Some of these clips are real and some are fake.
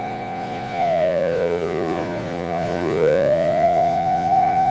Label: fake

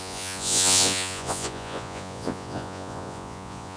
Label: fake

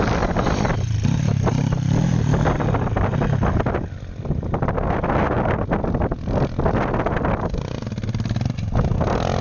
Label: real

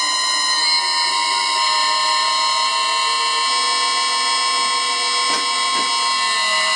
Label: real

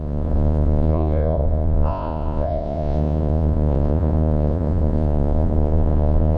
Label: fake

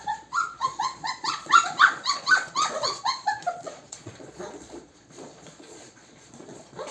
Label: fake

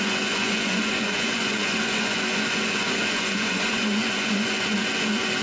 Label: fake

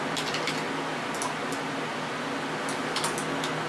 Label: real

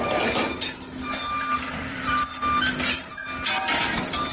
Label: real